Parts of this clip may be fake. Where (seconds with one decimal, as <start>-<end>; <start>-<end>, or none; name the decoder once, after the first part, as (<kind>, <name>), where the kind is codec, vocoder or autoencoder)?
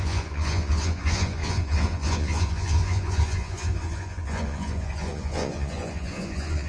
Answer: 0.0-6.7 (vocoder, Vocos)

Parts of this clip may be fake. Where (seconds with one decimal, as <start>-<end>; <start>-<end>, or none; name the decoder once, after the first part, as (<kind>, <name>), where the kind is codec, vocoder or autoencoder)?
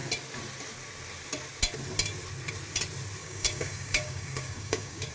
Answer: 3.2-5.1 (codec, DAC)